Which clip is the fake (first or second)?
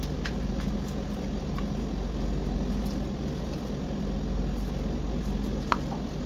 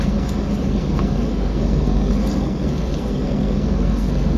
second